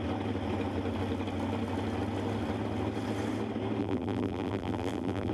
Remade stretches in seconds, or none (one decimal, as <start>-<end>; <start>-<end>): 3.8-5.3